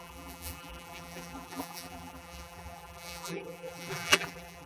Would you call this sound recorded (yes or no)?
no